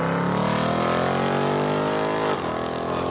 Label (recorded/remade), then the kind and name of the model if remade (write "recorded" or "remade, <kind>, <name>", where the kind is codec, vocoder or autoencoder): recorded